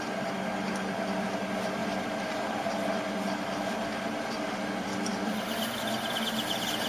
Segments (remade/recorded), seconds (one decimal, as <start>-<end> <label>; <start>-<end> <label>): 0.0-1.8 recorded; 1.8-5.8 remade; 5.8-6.9 recorded

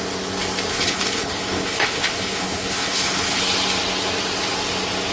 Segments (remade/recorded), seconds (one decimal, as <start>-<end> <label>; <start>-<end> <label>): 0.0-0.7 recorded; 0.7-3.4 remade; 3.4-5.1 recorded

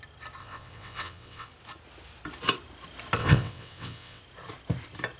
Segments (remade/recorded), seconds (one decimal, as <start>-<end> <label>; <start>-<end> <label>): 0.0-0.4 recorded; 0.4-1.5 remade; 1.5-3.2 recorded; 3.2-4.2 remade; 4.2-5.2 recorded

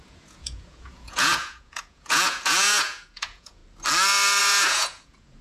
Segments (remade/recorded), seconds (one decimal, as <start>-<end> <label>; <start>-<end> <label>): 0.0-3.6 remade; 3.6-4.4 recorded; 4.4-5.4 remade

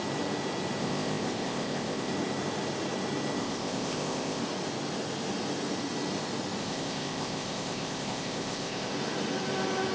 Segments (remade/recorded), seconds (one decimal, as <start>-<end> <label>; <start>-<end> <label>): 0.0-0.8 recorded; 0.8-2.1 remade; 2.1-3.4 recorded; 3.4-4.4 remade; 4.4-6.6 recorded; 6.6-8.9 remade; 8.9-9.9 recorded